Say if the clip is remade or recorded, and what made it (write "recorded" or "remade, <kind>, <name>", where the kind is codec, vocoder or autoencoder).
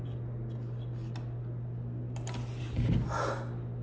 recorded